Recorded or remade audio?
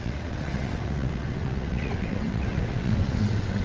remade